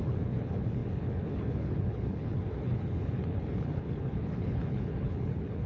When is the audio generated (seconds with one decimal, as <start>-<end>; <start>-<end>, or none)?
0.0-5.7